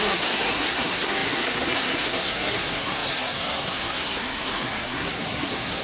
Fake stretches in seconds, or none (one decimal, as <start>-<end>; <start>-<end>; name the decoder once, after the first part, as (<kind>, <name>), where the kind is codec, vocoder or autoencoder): 0.0-5.8 (codec, SNAC)